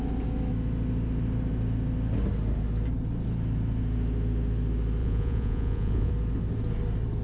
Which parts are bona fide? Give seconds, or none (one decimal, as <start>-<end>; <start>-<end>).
0.0-5.0; 6.1-7.2